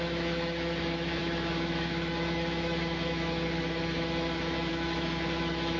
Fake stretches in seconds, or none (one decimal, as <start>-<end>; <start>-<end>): 0.0-5.8

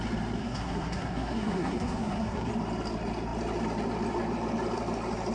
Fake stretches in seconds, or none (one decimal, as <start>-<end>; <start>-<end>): 0.4-2.5

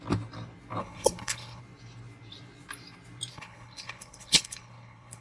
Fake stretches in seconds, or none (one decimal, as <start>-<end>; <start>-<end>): 0.8-1.6; 3.3-5.2

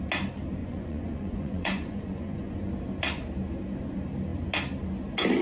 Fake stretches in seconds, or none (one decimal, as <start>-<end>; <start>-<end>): 0.6-2.7